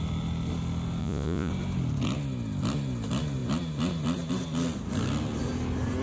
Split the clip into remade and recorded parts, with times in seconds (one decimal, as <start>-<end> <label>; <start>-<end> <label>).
0.0-1.0 recorded; 1.0-1.5 remade; 1.5-6.0 recorded